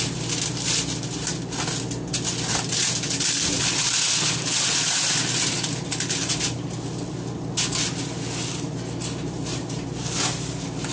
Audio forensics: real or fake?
real